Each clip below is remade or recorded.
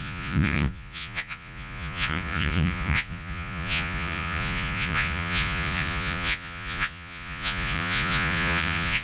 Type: remade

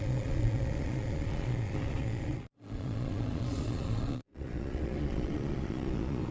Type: remade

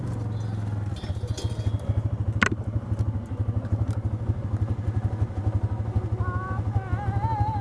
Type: recorded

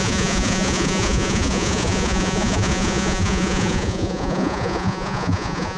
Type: remade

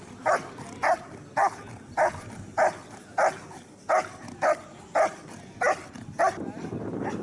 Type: recorded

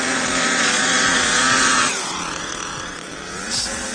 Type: remade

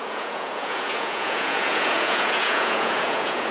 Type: remade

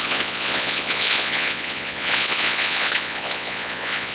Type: remade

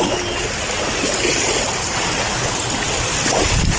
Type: recorded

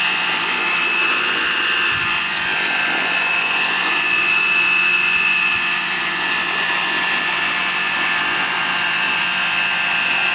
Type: remade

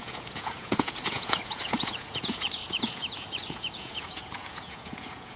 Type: remade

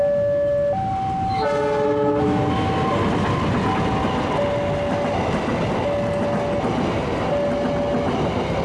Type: recorded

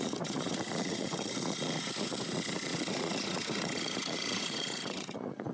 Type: remade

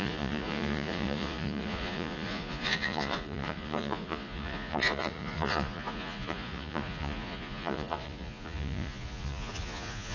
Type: remade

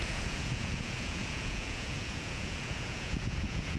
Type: remade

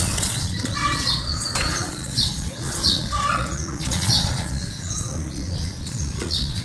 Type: remade